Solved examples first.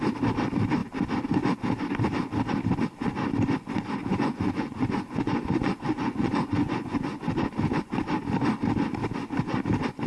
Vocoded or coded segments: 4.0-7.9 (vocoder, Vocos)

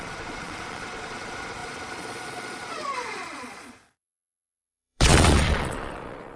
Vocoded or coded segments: 0.0-6.4 (vocoder, Vocos)

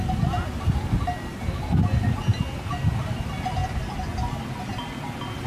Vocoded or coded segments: none

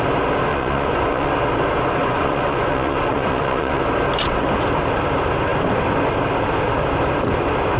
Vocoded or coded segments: 0.5-1.3 (vocoder, Vocos); 2.0-3.8